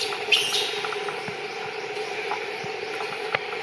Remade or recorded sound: recorded